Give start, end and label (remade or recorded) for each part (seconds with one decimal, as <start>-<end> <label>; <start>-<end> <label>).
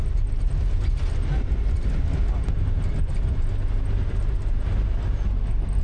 0.0-5.8 recorded